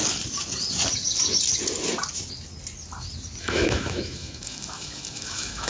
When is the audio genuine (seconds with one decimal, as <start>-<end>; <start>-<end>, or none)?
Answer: 0.0-3.4